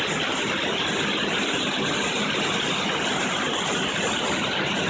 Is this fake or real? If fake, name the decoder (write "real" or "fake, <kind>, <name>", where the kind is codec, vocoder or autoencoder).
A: real